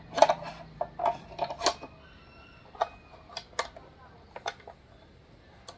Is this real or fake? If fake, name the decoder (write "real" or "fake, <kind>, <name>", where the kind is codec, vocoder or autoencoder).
real